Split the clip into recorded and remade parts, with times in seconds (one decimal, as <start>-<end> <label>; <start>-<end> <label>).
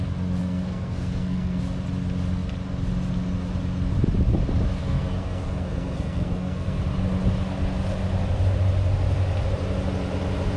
0.0-0.4 recorded; 0.4-1.6 remade; 1.6-4.8 recorded; 4.8-6.8 remade; 6.8-10.6 recorded